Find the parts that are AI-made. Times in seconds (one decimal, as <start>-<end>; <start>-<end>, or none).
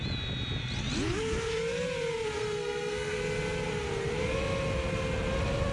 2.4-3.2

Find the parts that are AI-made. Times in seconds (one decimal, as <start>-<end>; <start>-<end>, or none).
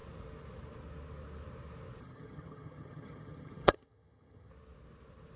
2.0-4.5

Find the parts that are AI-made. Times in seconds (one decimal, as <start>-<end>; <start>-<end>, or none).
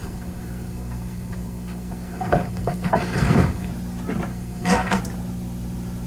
0.0-3.7; 4.3-5.0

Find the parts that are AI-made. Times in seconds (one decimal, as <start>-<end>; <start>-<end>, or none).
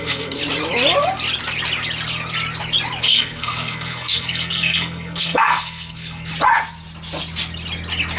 0.0-0.4; 3.0-6.3